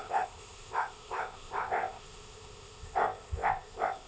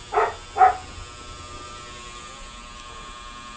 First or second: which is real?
second